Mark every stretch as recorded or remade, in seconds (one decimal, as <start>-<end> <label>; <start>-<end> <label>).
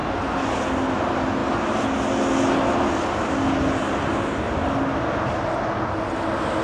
0.0-6.6 recorded